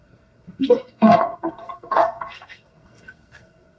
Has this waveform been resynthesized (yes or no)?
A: yes